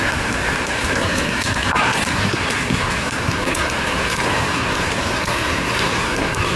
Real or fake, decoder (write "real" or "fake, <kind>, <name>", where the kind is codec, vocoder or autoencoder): fake, codec, SNAC